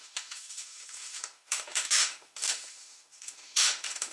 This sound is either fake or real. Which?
fake